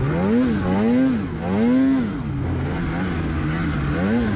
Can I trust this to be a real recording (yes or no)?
yes